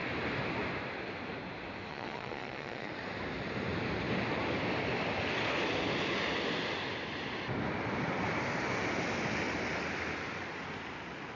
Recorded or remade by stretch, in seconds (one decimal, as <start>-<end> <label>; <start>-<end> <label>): 0.0-1.9 recorded; 1.9-2.9 remade; 2.9-11.4 recorded

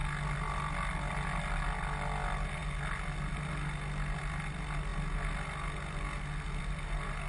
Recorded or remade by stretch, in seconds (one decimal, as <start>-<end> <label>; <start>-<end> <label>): 0.0-7.3 recorded

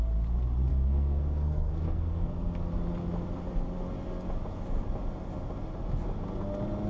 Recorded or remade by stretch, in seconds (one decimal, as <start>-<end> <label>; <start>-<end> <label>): 0.0-0.7 recorded; 0.7-2.7 remade; 2.7-6.9 recorded

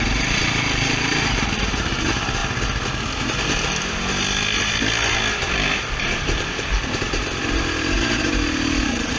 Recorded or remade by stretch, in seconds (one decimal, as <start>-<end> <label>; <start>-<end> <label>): 0.0-2.4 remade; 2.4-5.4 recorded; 5.4-9.2 remade

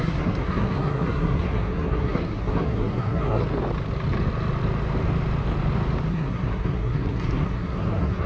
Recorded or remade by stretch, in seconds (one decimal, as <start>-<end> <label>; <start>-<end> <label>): 0.0-3.4 remade; 3.4-6.1 recorded; 6.1-8.3 remade

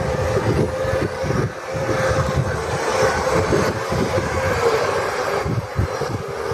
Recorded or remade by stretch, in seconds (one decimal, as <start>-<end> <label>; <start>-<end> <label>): 0.0-2.6 recorded; 2.6-6.0 remade; 6.0-6.5 recorded

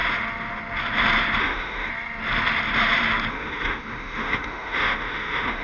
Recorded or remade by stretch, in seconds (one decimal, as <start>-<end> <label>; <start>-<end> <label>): 0.0-1.4 recorded; 1.4-1.9 remade; 1.9-3.3 recorded; 3.3-5.6 remade